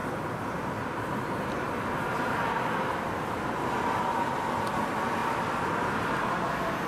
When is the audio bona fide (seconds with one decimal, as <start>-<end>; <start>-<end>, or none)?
0.0-6.9